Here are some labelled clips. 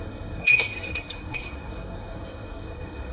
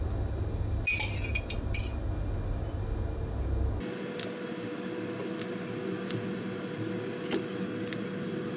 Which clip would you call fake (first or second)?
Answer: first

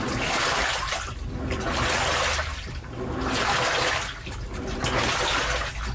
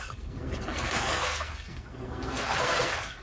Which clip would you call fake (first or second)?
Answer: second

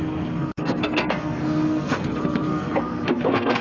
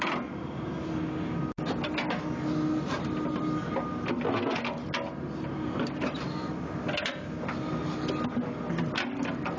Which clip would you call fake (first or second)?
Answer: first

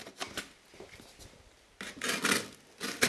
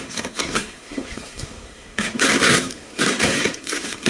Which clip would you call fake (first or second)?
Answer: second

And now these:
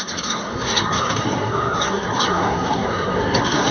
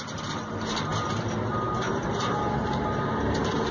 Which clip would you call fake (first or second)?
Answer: first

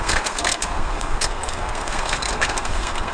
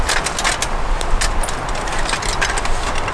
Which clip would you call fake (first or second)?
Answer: first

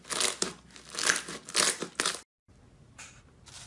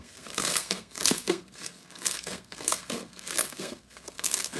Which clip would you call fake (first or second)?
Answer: second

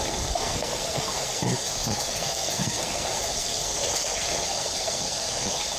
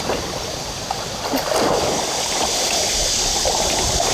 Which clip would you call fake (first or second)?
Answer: first